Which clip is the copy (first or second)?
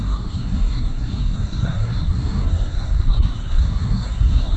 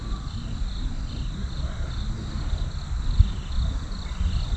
first